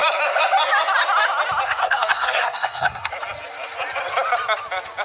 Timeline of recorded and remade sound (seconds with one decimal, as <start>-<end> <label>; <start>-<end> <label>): 0.0-1.8 recorded; 1.8-3.1 remade; 3.1-5.0 recorded